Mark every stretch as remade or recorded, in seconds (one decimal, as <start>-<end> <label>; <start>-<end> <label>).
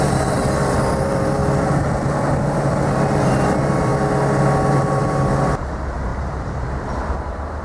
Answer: 0.0-1.4 remade; 1.4-2.3 recorded; 2.3-3.9 remade; 3.9-4.7 recorded; 4.7-7.6 remade